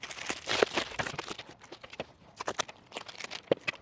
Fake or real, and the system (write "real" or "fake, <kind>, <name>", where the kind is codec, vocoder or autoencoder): real